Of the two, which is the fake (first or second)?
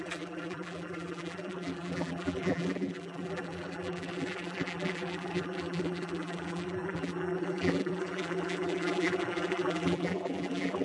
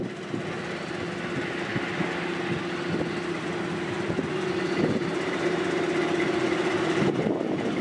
first